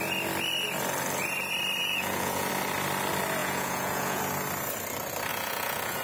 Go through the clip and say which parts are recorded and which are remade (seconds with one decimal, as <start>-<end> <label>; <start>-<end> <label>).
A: 0.0-1.8 recorded; 1.8-2.5 remade; 2.5-3.4 recorded; 3.4-4.2 remade; 4.2-5.3 recorded; 5.3-6.0 remade